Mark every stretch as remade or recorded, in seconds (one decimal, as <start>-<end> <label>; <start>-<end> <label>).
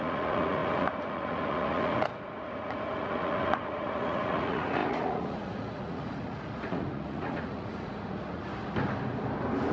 0.0-8.5 remade; 8.5-9.7 recorded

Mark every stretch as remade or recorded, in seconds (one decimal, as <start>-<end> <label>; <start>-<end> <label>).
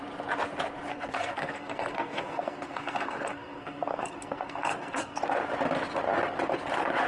0.0-0.9 recorded; 0.9-5.2 remade; 5.2-7.1 recorded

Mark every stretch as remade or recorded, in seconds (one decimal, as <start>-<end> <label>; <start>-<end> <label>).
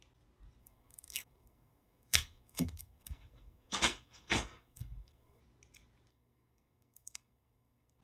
0.0-0.6 recorded; 0.6-5.4 remade; 5.4-6.1 recorded; 6.1-8.0 remade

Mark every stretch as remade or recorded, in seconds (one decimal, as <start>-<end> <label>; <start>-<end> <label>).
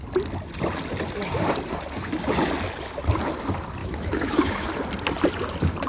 0.0-3.8 recorded; 3.8-4.7 remade; 4.7-5.9 recorded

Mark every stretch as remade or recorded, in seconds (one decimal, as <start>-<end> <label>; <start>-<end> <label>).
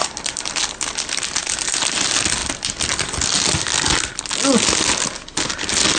0.0-6.0 recorded